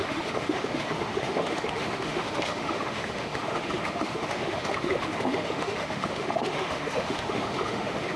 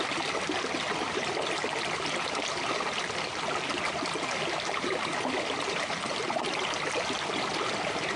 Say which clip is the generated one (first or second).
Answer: first